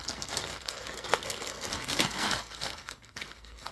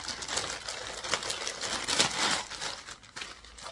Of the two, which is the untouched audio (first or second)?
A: second